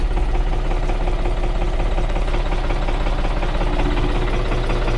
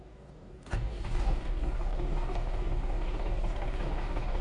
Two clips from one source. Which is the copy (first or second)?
second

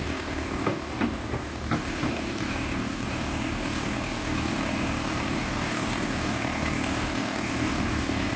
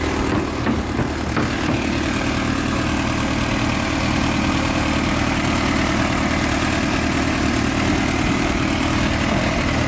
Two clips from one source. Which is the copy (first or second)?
first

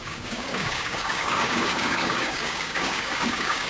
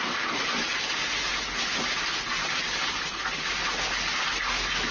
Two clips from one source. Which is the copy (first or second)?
first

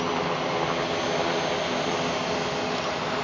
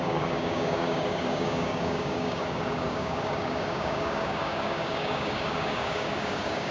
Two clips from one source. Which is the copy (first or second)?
second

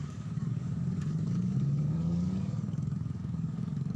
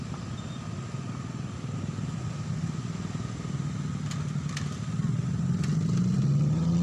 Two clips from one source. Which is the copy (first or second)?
first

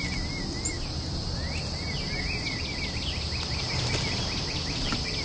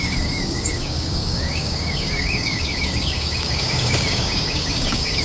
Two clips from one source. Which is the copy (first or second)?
second